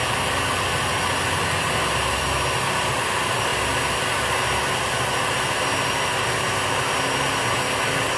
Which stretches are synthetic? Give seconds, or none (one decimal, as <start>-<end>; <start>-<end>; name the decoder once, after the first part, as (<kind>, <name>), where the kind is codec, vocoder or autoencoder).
none